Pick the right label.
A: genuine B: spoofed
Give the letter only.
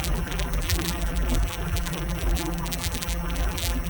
B